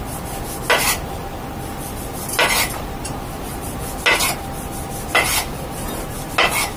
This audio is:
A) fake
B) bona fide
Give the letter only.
B